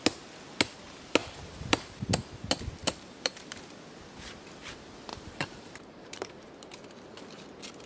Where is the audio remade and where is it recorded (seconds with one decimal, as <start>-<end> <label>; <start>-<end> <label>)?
0.0-1.2 recorded; 1.2-2.1 remade; 2.1-2.8 recorded; 2.8-3.6 remade; 3.6-5.1 recorded; 5.1-6.5 remade; 6.5-7.9 recorded